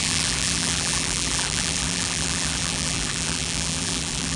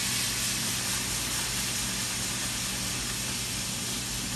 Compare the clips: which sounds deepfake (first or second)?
first